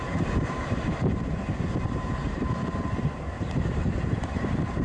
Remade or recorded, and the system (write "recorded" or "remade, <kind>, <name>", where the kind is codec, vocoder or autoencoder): remade, vocoder, BigVGAN v2